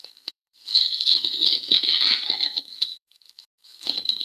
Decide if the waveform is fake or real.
fake